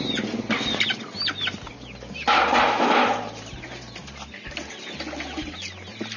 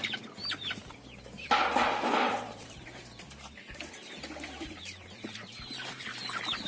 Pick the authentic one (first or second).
first